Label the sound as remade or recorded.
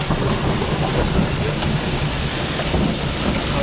recorded